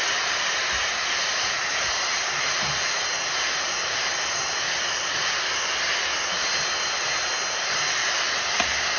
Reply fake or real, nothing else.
real